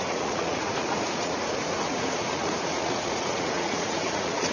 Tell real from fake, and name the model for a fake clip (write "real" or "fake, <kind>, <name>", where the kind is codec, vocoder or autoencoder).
fake, vocoder, Vocos